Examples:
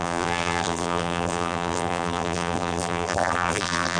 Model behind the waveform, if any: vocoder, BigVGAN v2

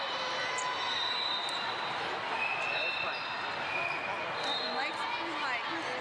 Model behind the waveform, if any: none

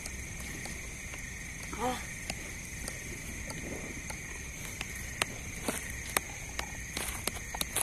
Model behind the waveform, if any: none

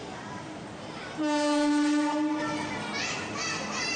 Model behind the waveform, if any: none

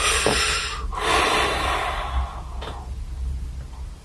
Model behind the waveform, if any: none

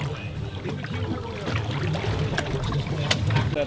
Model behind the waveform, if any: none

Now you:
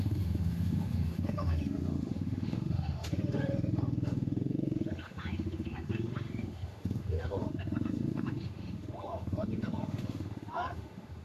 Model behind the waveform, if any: autoencoder, DAC-VAE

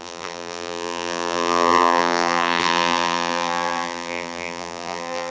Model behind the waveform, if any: vocoder, BigVGAN v2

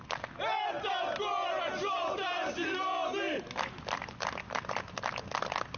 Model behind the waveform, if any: none